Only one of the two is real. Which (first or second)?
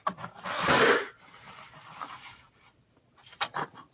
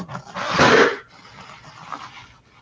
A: second